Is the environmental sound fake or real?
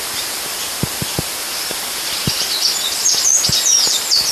real